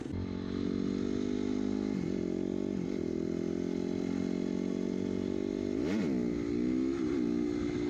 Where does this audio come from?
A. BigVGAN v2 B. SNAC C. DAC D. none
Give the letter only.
D